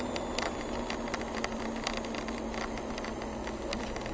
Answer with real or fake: real